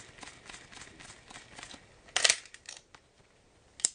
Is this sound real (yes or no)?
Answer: yes